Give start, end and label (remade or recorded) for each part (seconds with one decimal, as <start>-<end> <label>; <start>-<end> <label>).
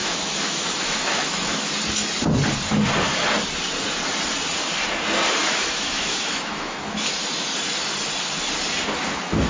0.0-1.7 remade; 1.7-5.4 recorded; 5.4-7.1 remade; 7.1-9.5 recorded